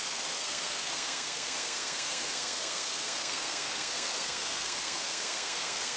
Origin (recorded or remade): remade